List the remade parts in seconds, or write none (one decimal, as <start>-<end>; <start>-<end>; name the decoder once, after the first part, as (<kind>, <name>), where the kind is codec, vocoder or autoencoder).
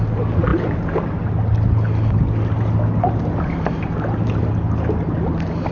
none